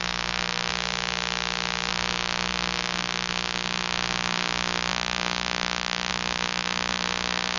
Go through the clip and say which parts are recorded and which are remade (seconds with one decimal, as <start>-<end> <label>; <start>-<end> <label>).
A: 0.0-0.7 remade; 0.7-1.9 recorded; 1.9-7.6 remade